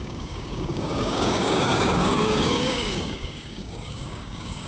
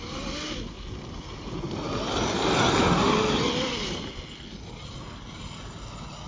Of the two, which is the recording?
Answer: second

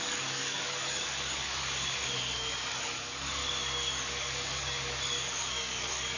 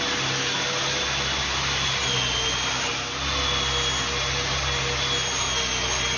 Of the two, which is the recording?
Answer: second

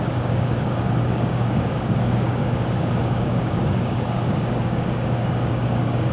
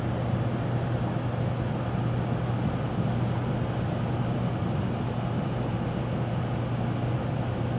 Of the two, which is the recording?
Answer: second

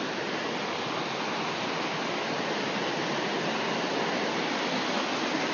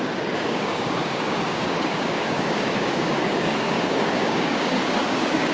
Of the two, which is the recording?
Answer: first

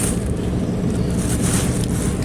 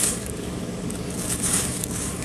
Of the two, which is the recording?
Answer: first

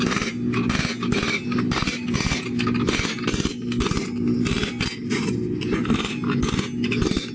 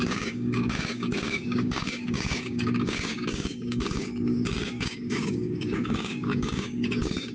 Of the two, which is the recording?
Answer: first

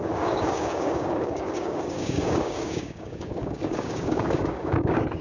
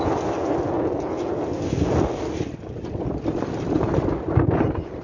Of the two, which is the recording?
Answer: second